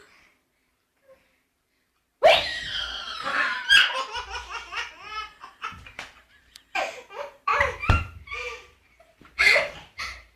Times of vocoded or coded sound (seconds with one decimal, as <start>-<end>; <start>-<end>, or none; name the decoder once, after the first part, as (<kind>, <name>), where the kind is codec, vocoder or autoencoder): 0.0-10.4 (vocoder, BigVGAN v2)